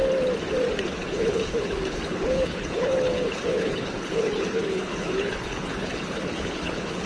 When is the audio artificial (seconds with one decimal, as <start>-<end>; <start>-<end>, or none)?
0.8-7.1

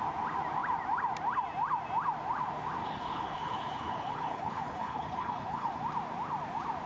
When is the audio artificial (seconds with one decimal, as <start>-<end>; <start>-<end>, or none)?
2.8-5.8